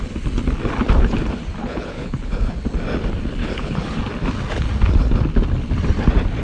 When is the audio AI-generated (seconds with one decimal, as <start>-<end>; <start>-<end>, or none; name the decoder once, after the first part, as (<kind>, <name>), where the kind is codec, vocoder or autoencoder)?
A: 1.6-2.5 (codec, HILCodec); 3.4-4.0